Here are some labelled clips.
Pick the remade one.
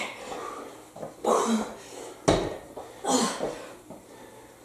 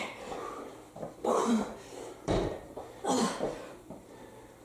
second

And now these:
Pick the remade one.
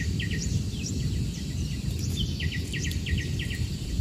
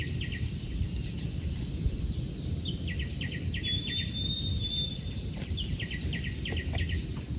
second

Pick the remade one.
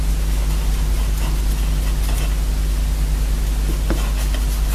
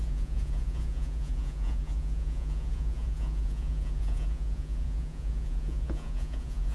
second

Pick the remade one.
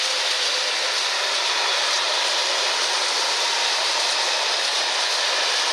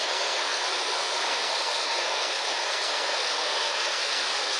second